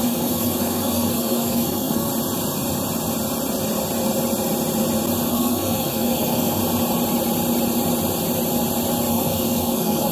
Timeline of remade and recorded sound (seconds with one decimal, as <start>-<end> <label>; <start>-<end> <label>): 0.0-2.1 remade; 2.1-5.3 recorded; 5.3-6.6 remade; 6.6-9.1 recorded; 9.1-10.1 remade